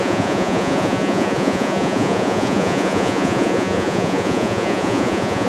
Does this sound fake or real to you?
fake